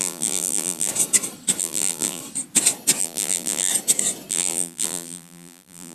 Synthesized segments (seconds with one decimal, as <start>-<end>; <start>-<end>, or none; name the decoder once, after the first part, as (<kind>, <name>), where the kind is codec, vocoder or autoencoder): 0.0-0.9 (vocoder, BigVGAN v2); 1.6-2.2; 3.0-3.7; 4.3-5.9